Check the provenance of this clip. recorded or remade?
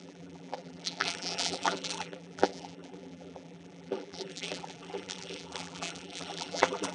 remade